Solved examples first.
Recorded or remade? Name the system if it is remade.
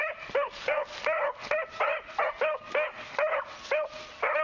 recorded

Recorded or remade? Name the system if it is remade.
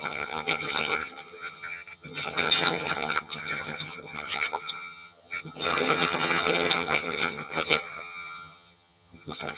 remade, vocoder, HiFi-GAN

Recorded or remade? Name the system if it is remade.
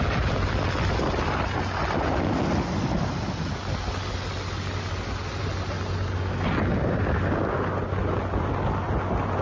recorded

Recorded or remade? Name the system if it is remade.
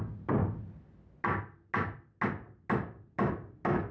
recorded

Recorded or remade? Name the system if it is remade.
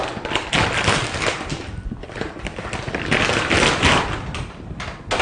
recorded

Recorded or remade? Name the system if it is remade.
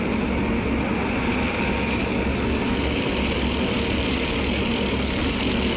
recorded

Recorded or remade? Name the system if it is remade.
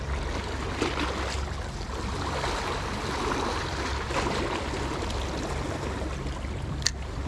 recorded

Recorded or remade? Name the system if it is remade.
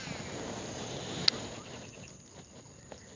recorded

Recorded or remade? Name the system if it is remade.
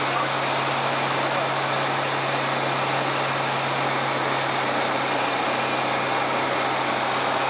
recorded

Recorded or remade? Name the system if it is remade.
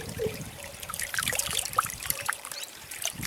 remade, vocoder, BigVGAN v2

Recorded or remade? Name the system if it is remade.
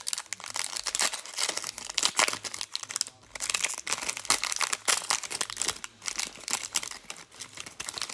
recorded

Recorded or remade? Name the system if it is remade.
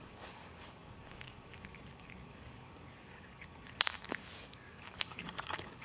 remade, codec, DAC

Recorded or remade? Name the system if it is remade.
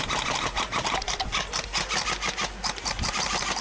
recorded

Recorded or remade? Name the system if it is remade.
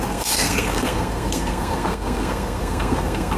remade, codec, SNAC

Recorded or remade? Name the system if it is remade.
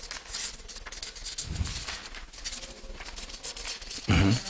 recorded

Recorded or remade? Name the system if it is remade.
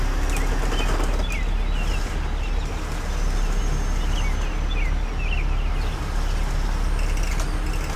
recorded